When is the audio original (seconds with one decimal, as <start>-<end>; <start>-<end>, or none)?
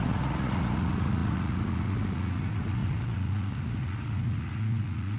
none